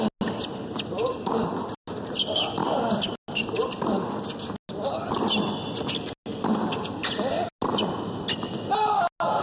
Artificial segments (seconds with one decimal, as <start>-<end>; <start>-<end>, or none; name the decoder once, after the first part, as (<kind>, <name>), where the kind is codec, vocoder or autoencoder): none